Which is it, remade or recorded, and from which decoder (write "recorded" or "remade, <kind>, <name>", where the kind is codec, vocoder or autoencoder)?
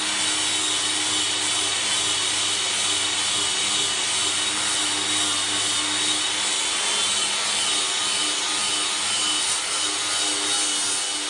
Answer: recorded